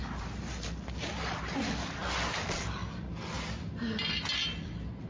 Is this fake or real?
real